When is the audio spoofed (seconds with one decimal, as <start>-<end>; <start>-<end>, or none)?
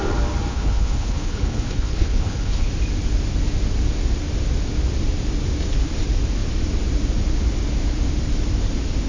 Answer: 0.5-2.7